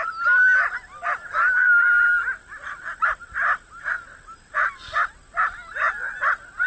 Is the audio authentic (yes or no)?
yes